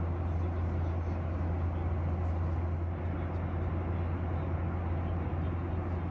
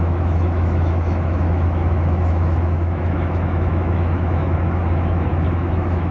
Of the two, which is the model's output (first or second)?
second